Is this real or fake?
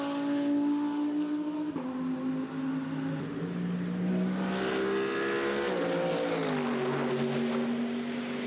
real